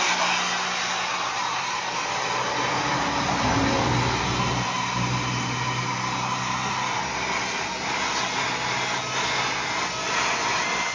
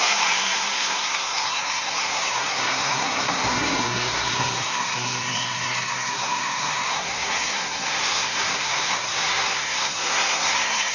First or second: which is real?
first